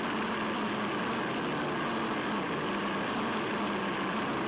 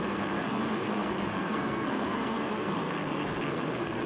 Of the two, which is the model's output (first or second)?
second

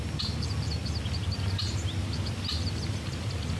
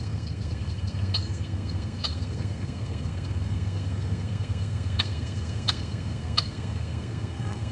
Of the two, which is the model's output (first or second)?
second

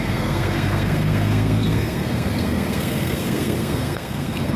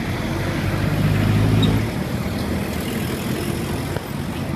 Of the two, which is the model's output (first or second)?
first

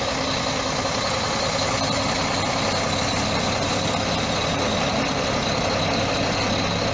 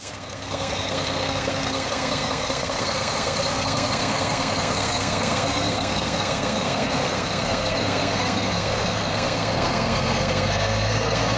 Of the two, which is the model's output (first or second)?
second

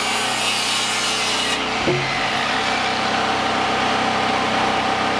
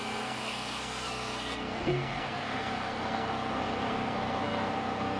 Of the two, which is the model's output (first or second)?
second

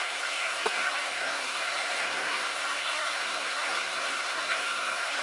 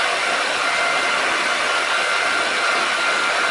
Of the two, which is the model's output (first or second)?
first